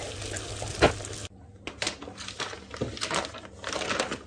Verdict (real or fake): real